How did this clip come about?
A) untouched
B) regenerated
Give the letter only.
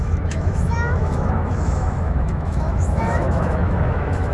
B